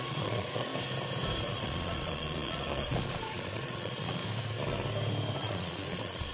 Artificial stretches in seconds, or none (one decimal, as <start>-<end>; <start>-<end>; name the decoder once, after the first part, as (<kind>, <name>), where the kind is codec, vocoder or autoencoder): 0.0-0.7 (vocoder, Vocos); 1.4-4.2; 5.4-6.3